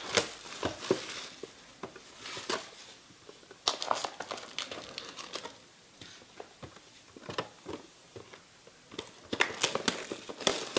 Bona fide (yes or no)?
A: yes